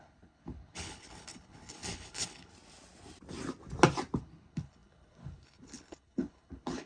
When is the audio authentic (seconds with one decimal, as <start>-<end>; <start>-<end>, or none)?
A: 2.5-4.2